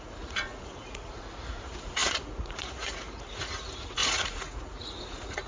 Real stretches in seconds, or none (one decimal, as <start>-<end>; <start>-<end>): none